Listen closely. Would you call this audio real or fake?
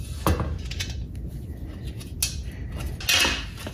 real